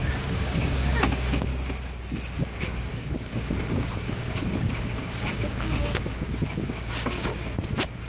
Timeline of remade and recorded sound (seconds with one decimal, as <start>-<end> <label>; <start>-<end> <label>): 0.0-1.5 remade; 1.5-2.0 recorded; 2.0-7.3 remade; 7.3-8.1 recorded